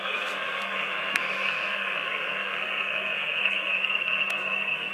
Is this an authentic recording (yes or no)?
no